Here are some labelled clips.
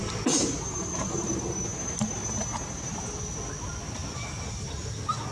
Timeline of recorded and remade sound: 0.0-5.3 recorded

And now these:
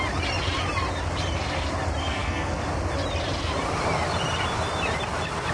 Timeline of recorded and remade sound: 0.0-2.0 recorded; 2.0-2.6 remade; 2.6-5.5 recorded

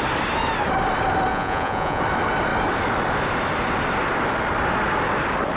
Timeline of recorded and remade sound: 0.0-1.3 recorded; 1.3-2.0 remade; 2.0-5.6 recorded